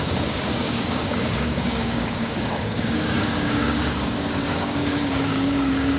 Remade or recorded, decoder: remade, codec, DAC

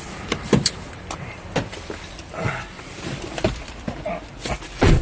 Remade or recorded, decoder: remade, vocoder, BigVGAN v2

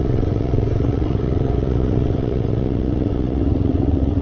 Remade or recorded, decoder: remade, vocoder, WaveNeXt